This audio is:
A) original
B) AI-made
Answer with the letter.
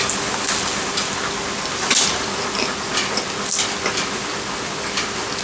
A